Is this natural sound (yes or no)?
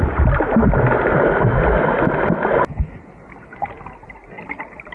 yes